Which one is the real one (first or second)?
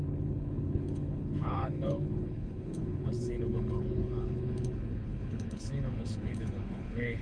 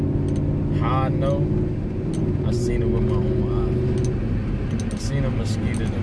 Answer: second